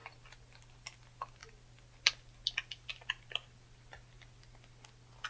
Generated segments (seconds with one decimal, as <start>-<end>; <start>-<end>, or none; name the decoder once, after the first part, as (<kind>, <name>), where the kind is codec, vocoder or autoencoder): none